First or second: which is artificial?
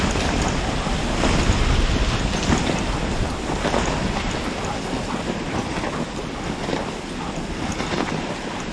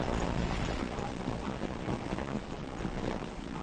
second